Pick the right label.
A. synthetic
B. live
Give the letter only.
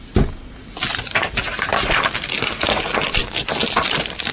B